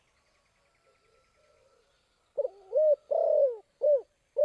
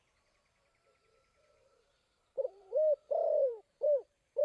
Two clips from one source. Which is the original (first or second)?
first